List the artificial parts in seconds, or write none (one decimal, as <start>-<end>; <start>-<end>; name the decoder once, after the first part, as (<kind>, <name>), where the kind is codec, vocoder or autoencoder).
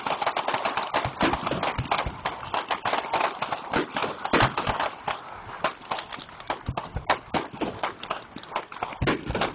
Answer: none